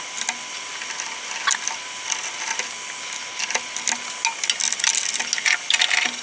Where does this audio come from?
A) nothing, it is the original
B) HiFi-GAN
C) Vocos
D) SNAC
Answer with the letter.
A